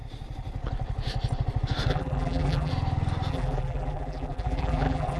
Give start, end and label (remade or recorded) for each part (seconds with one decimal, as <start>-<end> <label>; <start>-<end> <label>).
0.0-1.9 recorded; 1.9-2.7 remade; 2.7-3.3 recorded; 3.3-5.2 remade